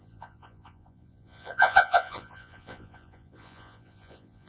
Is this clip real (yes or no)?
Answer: no